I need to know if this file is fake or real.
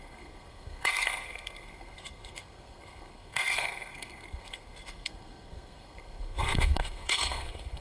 fake